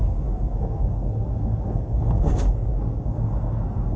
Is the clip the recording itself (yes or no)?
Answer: no